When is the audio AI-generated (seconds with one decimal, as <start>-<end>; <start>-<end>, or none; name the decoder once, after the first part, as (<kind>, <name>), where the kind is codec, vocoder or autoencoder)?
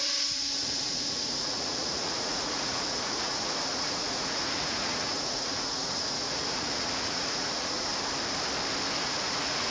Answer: 0.0-7.9 (vocoder, Vocos); 9.0-9.7